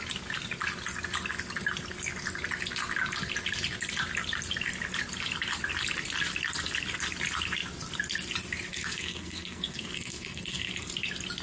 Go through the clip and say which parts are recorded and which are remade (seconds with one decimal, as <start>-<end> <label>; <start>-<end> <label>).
0.0-8.7 recorded; 8.7-10.7 remade; 10.7-11.4 recorded